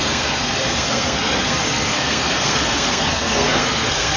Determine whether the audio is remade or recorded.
remade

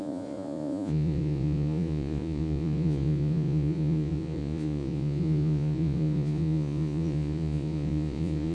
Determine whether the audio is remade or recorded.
remade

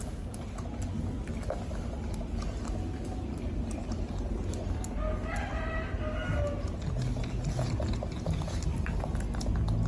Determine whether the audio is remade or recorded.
recorded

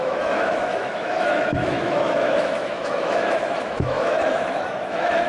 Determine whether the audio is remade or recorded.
remade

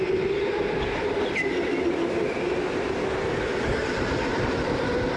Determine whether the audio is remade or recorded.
recorded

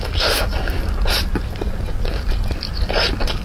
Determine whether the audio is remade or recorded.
recorded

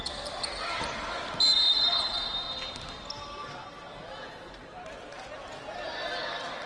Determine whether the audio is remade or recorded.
recorded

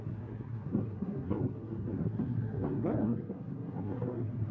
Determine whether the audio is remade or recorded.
remade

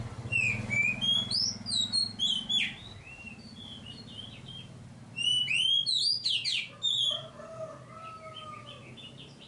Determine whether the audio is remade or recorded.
recorded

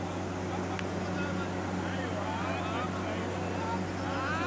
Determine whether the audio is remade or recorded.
recorded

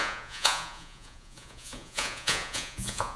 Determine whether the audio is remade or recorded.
remade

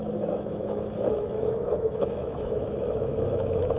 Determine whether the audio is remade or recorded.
remade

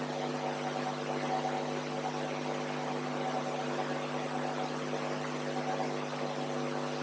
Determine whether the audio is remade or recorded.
recorded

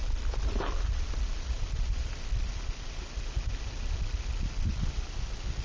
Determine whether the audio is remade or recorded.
recorded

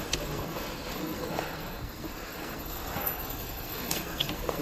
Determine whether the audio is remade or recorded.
remade